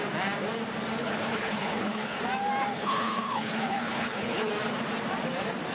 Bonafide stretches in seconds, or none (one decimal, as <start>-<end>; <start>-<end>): 0.0-1.0; 2.2-2.7; 4.5-5.7